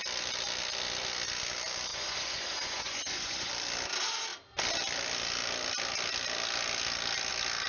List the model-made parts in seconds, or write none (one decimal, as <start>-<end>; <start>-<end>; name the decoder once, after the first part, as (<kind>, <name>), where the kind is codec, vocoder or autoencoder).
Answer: 1.9-3.5 (vocoder, Vocos)